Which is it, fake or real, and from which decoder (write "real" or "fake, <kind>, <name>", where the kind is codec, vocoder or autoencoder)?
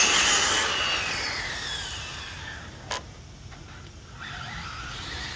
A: real